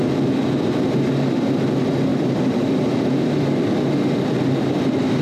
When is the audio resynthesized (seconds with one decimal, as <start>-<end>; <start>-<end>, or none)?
2.1-5.2